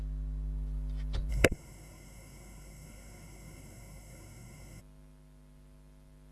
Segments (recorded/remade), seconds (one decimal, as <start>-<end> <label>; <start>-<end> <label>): 0.0-1.3 recorded; 1.3-4.8 remade; 4.8-6.3 recorded